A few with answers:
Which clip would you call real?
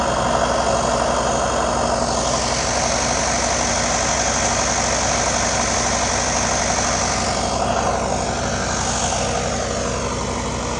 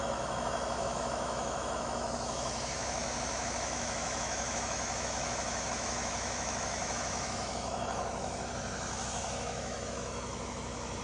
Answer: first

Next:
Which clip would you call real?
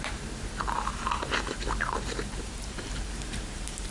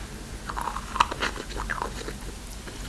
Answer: second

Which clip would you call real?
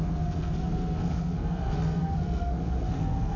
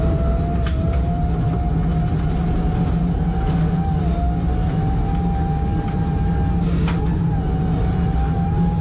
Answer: second